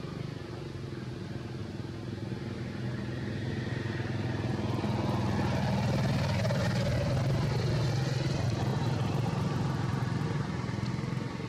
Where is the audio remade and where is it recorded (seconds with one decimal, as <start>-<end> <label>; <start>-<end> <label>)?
0.0-8.7 recorded; 8.7-10.9 remade; 10.9-11.5 recorded